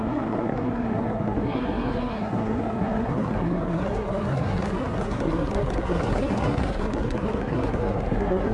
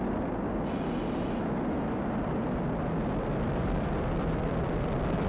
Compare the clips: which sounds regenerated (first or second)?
first